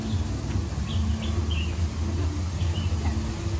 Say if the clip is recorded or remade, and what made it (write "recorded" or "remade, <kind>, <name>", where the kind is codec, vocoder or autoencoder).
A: recorded